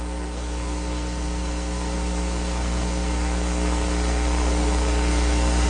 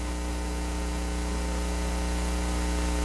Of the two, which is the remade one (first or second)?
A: first